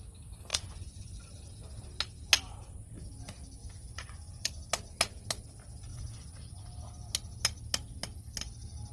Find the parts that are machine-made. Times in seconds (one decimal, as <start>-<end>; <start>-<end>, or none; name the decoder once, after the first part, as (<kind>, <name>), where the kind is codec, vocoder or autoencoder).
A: 0.5-1.3 (vocoder, Vocos); 3.6-4.5; 5.9-6.6